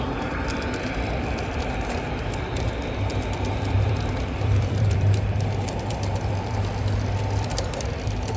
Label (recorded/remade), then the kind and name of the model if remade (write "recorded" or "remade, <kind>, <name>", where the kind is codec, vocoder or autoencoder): remade, vocoder, BigVGAN v2